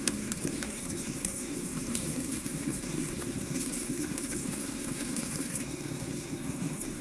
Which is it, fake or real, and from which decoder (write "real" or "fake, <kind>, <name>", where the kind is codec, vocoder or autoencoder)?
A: fake, codec, SNAC